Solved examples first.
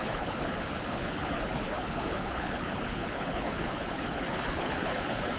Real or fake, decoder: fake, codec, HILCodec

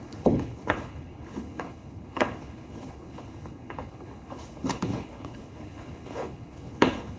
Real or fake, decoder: fake, codec, HILCodec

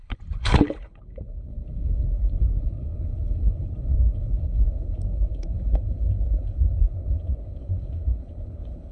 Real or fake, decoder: fake, codec, HILCodec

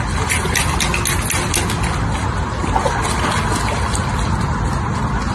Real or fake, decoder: real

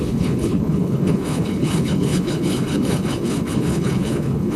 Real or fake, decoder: fake, codec, HILCodec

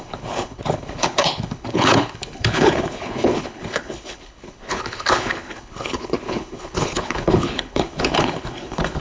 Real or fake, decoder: fake, codec, HILCodec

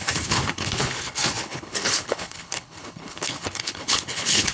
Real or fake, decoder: fake, codec, HILCodec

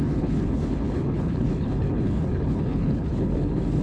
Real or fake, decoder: fake, codec, HILCodec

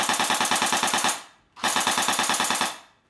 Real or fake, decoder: real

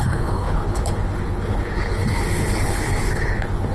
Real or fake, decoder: fake, codec, HILCodec